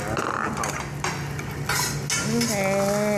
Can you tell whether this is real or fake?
real